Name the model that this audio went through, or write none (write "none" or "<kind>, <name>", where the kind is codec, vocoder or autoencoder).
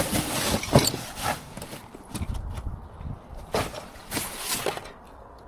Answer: none